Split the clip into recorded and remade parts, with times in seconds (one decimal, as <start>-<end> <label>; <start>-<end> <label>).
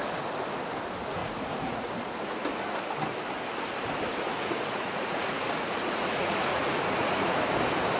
0.0-1.2 recorded; 1.2-1.9 remade; 1.9-4.3 recorded; 4.3-7.4 remade; 7.4-8.0 recorded